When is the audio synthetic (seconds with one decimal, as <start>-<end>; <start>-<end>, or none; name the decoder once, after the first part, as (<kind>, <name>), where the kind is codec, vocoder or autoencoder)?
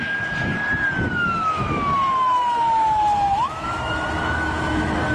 0.0-0.5 (autoencoder, DAC-VAE); 1.4-5.1